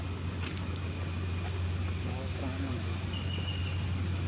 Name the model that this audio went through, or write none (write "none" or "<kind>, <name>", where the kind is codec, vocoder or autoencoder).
none